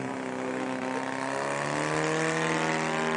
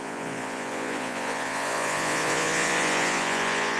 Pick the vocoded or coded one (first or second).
second